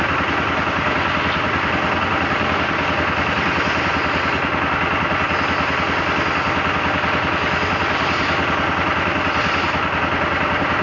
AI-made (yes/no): no